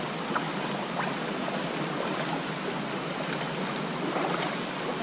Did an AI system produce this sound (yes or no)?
no